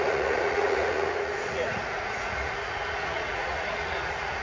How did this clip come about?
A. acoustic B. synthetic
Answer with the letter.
B